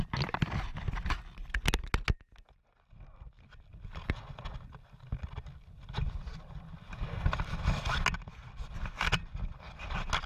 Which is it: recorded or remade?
recorded